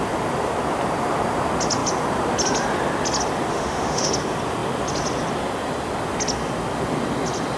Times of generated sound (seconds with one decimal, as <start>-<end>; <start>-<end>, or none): 3.5-4.1